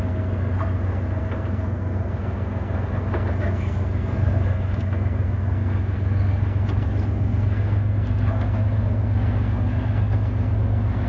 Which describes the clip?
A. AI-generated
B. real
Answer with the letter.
A